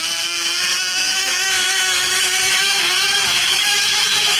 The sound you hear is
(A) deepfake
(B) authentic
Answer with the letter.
A